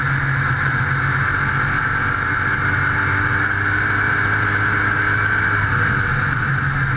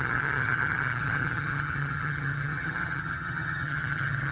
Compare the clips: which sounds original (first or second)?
first